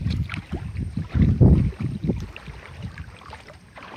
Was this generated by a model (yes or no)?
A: yes